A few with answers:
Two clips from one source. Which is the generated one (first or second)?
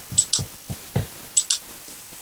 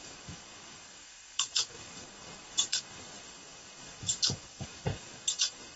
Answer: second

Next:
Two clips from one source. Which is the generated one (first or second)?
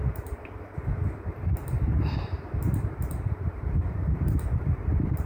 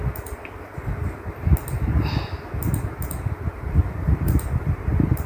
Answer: first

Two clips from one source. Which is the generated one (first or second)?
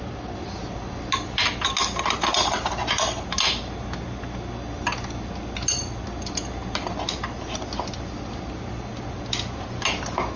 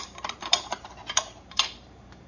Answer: second